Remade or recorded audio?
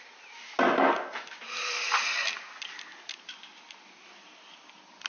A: recorded